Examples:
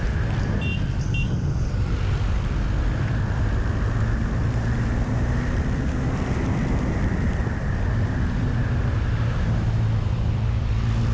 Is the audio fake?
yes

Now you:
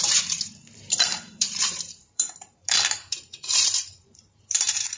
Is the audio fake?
yes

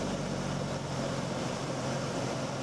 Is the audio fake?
no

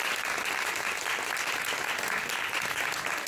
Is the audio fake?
no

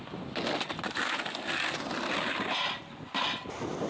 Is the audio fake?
no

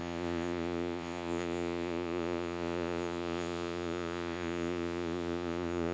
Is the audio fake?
yes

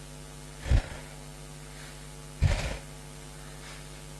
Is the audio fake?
no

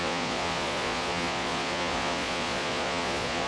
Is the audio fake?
yes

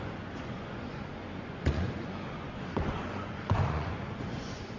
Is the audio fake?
yes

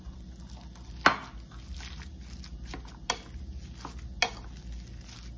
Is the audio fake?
no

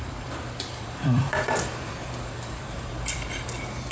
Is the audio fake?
yes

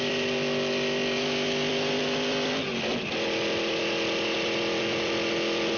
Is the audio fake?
no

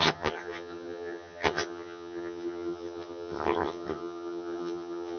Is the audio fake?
yes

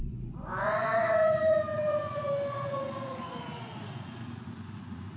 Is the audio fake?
yes